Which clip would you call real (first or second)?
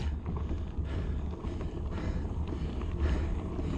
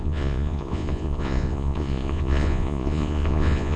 first